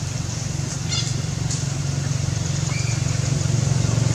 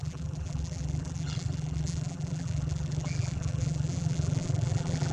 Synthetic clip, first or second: second